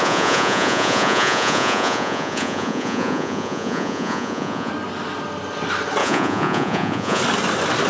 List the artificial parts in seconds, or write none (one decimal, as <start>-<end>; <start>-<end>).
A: 0.0-4.7; 6.0-7.2